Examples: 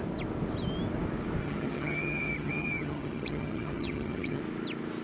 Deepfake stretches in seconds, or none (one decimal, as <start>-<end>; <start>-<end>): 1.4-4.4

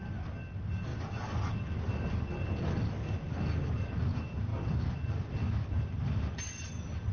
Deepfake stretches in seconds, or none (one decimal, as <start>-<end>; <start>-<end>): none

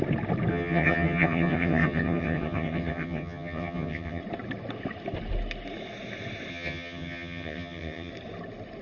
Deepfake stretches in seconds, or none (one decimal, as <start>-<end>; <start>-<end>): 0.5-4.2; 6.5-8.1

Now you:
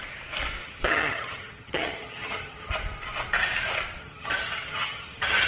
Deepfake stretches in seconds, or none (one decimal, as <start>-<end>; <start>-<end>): 0.6-2.7; 4.0-5.5

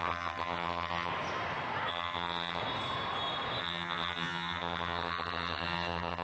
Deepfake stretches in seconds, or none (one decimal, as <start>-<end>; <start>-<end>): 0.0-1.1; 1.9-2.6; 3.6-6.2

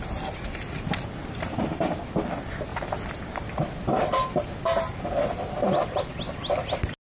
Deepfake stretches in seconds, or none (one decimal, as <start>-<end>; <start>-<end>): none